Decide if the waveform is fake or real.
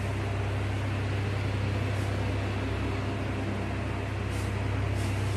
real